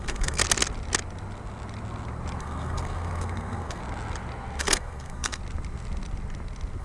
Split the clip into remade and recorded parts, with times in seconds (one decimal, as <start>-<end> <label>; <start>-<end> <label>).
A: 0.0-0.4 remade; 0.4-2.4 recorded; 2.4-3.8 remade; 3.8-4.6 recorded; 4.6-5.4 remade; 5.4-6.8 recorded

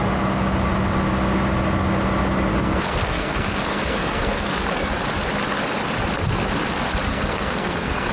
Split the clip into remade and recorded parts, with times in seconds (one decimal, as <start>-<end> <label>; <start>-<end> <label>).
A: 0.0-2.5 recorded; 2.5-4.5 remade; 4.5-7.1 recorded; 7.1-8.1 remade

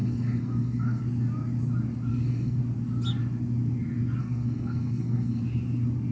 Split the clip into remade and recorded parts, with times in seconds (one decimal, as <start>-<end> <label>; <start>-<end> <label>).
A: 0.0-1.0 remade; 1.0-2.1 recorded; 2.1-2.6 remade; 2.6-4.2 recorded; 4.2-5.4 remade; 5.4-6.1 recorded

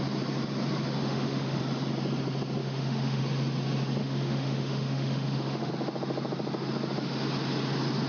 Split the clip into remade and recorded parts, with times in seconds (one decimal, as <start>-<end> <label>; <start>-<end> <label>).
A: 0.0-1.0 recorded; 1.0-1.6 remade; 1.6-2.6 recorded; 2.6-3.2 remade; 3.2-4.0 recorded; 4.0-5.7 remade; 5.7-8.1 recorded

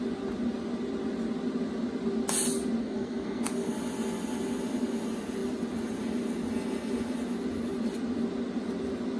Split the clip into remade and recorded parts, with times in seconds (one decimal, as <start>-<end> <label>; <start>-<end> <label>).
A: 0.0-2.8 recorded; 2.8-3.7 remade; 3.7-9.2 recorded